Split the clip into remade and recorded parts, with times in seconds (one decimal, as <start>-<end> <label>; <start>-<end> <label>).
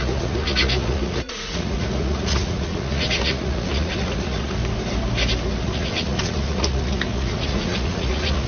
0.0-4.6 remade; 4.6-5.6 recorded; 5.6-8.5 remade